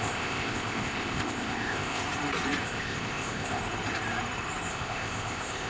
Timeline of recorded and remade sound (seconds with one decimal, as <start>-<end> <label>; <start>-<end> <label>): 0.0-2.0 remade; 2.0-2.6 recorded; 2.6-3.6 remade; 3.6-4.7 recorded; 4.7-5.7 remade